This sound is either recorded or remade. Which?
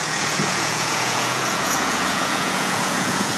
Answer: remade